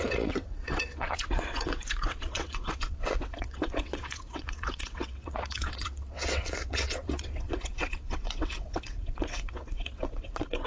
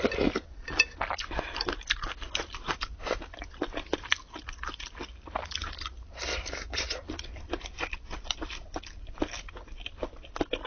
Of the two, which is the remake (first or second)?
first